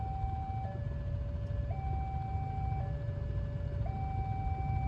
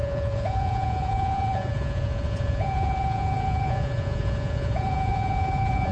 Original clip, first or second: first